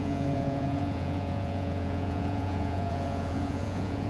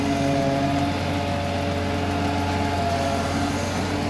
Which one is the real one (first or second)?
second